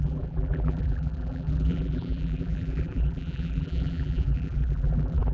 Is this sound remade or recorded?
remade